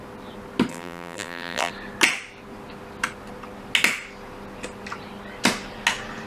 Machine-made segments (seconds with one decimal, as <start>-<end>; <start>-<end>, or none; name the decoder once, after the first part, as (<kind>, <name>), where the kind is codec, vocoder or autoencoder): 0.7-1.7 (vocoder, BigVGAN v2)